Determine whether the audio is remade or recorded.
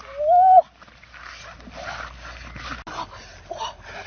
recorded